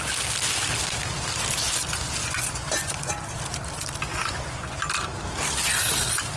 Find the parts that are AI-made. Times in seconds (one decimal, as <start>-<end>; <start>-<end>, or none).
2.2-3.1; 4.1-4.7